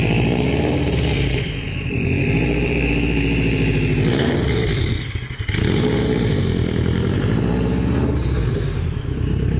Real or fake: fake